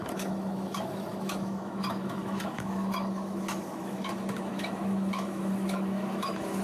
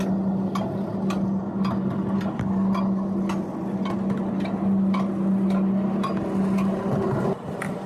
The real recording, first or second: second